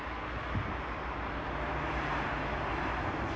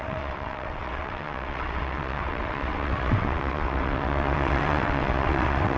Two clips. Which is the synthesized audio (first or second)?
second